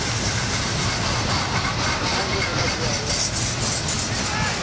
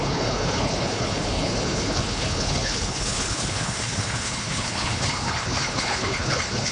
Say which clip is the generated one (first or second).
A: second